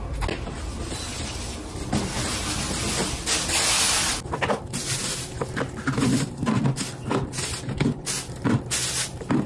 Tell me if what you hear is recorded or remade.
recorded